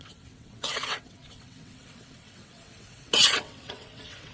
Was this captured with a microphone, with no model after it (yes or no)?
no